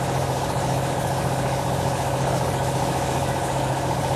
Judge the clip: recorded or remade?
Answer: remade